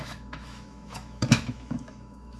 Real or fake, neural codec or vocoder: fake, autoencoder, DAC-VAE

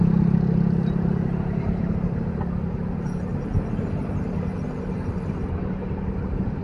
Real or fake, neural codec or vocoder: real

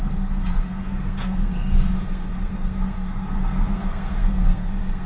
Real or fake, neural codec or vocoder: fake, codec, SNAC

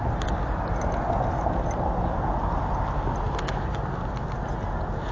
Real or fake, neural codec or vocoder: real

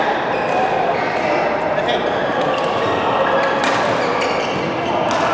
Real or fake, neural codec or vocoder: real